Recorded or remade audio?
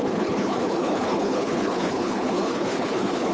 remade